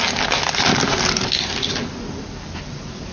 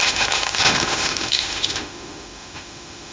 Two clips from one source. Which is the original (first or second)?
first